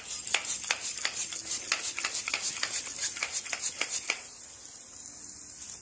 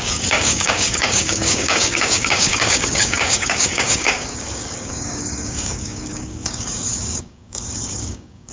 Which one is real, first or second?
first